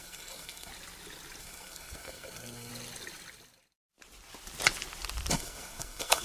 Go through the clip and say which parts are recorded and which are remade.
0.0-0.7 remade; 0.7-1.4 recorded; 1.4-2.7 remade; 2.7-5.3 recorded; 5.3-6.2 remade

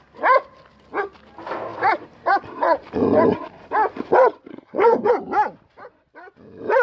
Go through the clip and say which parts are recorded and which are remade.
0.0-4.5 recorded; 4.5-5.1 remade; 5.1-6.8 recorded

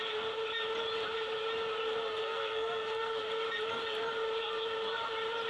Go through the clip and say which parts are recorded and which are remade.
0.0-2.2 recorded; 2.2-3.2 remade; 3.2-5.5 recorded

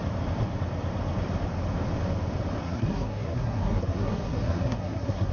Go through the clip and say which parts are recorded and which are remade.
0.0-2.6 recorded; 2.6-5.3 remade

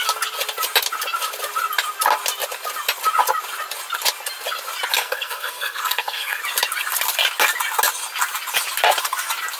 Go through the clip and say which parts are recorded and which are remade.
0.0-4.9 recorded; 4.9-6.4 remade; 6.4-9.6 recorded

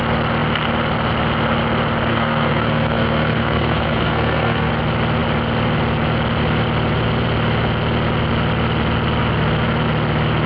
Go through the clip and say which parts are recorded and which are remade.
0.0-2.1 recorded; 2.1-4.7 remade; 4.7-10.5 recorded

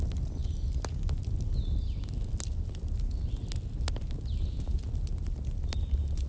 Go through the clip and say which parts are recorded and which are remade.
0.0-6.3 recorded